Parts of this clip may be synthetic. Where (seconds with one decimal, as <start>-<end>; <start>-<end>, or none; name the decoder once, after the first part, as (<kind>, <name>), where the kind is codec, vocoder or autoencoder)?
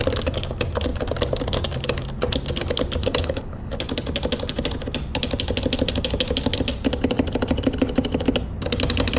3.0-3.8 (codec, HILCodec)